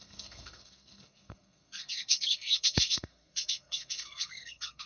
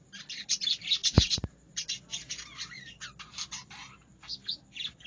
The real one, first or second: second